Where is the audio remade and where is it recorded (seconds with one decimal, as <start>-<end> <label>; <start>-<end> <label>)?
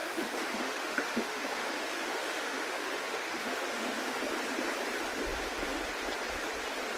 0.0-4.2 remade; 4.2-7.0 recorded